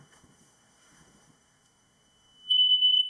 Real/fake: fake